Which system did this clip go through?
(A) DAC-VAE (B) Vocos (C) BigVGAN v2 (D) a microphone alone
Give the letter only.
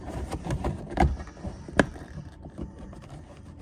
C